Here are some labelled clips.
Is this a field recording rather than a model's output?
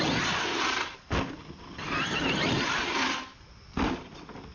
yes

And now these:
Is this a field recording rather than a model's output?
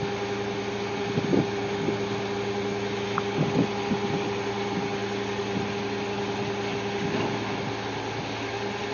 yes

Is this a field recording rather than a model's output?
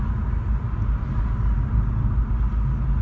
yes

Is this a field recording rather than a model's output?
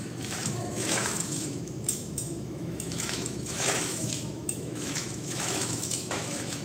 no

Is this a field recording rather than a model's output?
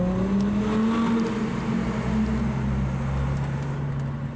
yes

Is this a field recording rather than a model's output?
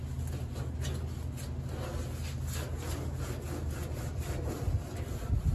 yes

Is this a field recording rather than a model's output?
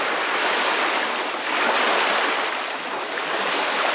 yes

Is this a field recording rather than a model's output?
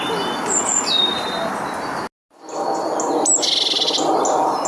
yes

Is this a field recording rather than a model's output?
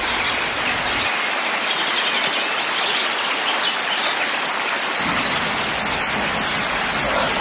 yes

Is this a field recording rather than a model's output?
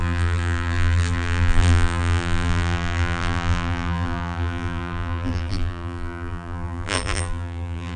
no